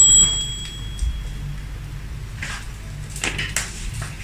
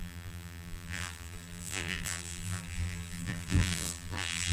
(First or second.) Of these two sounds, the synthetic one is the second